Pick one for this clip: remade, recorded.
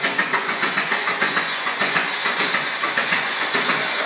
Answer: remade